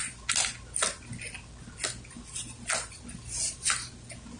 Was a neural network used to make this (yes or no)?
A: no